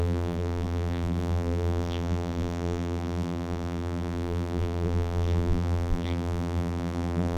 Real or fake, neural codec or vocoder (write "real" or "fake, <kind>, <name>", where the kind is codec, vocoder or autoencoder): fake, vocoder, BigVGAN v2